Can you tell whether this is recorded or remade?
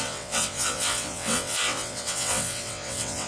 remade